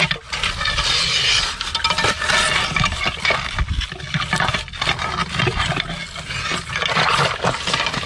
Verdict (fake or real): real